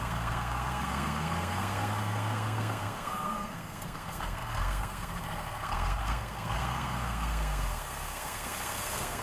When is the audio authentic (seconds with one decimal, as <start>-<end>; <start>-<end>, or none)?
none